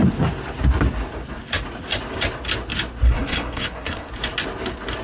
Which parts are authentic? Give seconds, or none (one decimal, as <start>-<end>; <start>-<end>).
0.0-3.0; 4.1-5.0